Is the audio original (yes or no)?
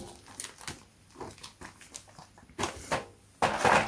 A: yes